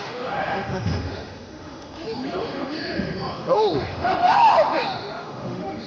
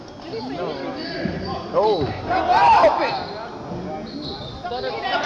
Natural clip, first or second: second